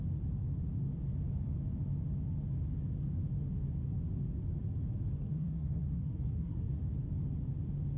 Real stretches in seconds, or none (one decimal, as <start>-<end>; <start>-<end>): 0.0-5.2; 6.8-8.0